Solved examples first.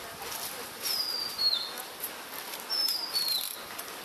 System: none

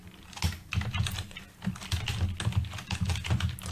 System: none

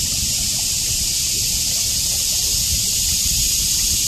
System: none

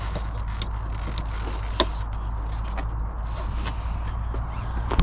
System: none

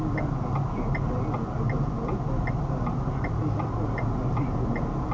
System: none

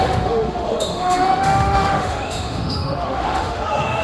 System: autoencoder, DAC-VAE